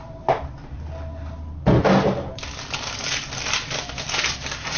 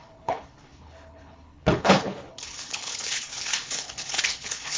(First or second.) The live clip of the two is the first